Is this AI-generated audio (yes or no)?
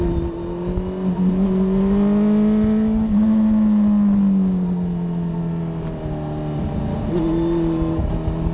no